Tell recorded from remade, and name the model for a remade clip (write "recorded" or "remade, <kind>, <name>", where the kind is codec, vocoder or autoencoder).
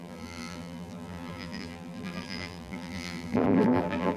remade, vocoder, BigVGAN v2